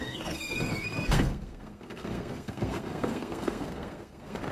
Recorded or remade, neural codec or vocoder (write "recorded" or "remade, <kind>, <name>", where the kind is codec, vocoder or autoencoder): remade, codec, SNAC